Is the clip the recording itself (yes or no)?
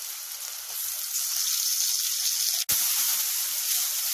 yes